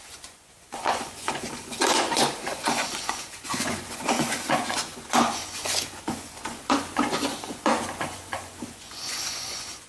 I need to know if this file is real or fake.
fake